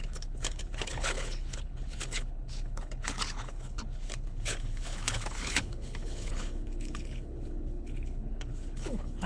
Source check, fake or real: fake